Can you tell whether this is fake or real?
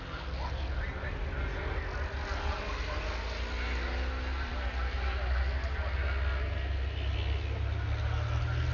real